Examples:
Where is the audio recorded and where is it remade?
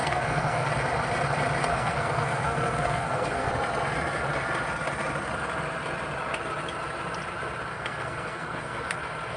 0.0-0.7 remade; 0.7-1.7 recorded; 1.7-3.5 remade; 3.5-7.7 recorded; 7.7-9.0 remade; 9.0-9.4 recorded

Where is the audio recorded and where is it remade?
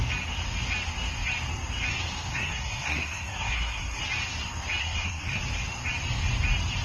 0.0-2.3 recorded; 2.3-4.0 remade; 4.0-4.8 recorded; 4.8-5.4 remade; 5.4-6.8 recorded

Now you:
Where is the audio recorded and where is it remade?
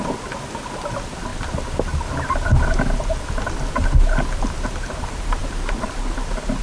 0.0-6.6 recorded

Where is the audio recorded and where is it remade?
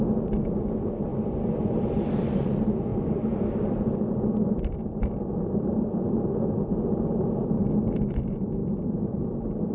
0.0-2.9 recorded; 2.9-6.1 remade; 6.1-8.6 recorded; 8.6-9.7 remade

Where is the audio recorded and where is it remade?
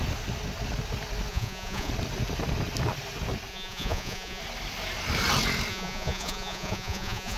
0.0-1.3 recorded; 1.3-1.9 remade; 1.9-3.5 recorded; 3.5-4.4 remade; 4.4-5.7 recorded; 5.7-7.4 remade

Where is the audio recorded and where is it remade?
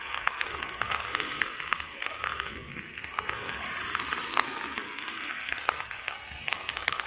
0.0-3.6 remade; 3.6-4.3 recorded; 4.3-7.1 remade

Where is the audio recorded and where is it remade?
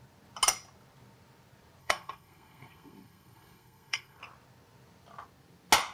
0.0-1.8 recorded; 1.8-4.2 remade; 4.2-5.9 recorded